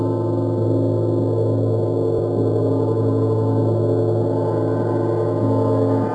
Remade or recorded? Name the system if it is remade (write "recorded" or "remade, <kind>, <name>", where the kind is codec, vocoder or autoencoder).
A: recorded